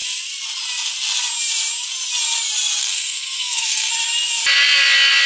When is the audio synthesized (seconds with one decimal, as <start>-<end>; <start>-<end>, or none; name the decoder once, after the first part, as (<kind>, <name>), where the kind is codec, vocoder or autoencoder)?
2.8-3.9 (codec, SNAC)